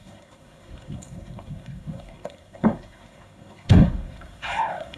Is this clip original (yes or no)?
no